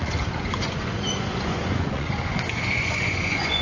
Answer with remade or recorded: remade